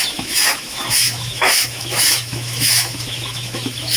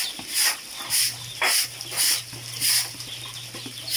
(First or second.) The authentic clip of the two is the second